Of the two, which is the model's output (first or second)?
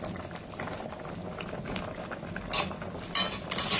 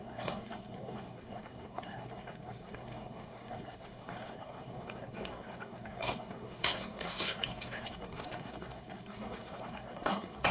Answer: second